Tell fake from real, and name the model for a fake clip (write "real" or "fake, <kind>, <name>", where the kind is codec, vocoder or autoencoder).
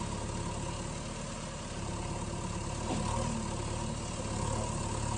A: real